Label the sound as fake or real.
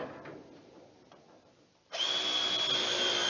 real